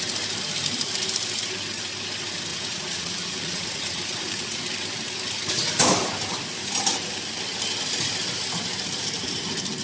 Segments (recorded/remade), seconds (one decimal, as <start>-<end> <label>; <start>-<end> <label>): 0.0-2.5 recorded; 2.5-4.6 remade; 4.6-9.8 recorded